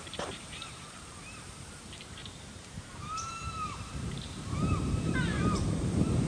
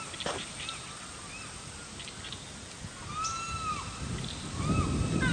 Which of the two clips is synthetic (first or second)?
first